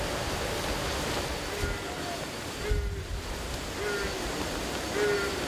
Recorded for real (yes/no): yes